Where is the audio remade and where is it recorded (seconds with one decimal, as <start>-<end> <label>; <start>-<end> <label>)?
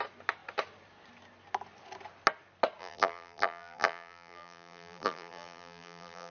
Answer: 0.0-2.8 recorded; 2.8-6.3 remade